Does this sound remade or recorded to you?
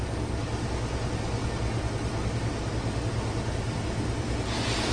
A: recorded